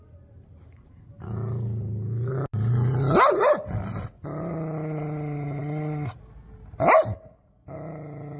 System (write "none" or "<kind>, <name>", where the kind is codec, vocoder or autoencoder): none